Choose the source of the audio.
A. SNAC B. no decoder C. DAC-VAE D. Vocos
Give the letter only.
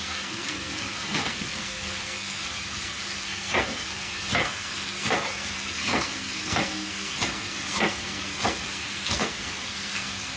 A